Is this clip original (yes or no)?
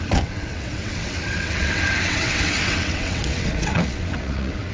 no